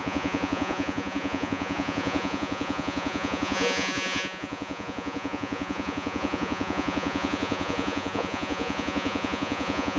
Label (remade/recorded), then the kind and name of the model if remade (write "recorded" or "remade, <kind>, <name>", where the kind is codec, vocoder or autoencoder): remade, vocoder, Vocos